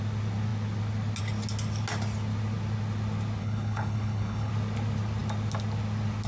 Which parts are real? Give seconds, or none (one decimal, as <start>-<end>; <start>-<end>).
0.0-3.4; 4.5-6.3